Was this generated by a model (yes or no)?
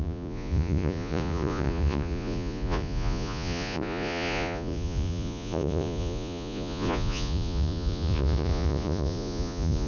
yes